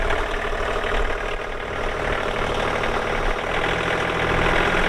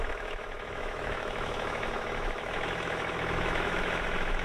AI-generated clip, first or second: second